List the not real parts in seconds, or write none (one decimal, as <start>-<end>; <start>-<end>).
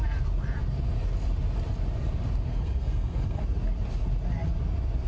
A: 2.5-3.4